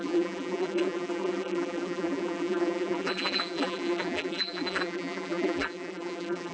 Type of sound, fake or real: fake